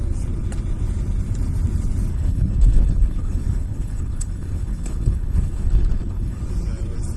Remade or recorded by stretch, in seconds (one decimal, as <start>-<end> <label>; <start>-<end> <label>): 0.0-2.1 recorded; 2.1-6.4 remade; 6.4-7.2 recorded